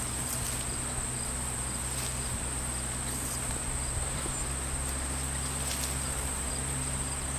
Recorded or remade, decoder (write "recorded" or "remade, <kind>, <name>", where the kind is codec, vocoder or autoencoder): recorded